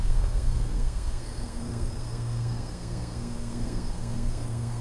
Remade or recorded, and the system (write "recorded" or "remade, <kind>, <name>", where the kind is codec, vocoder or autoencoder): remade, codec, SNAC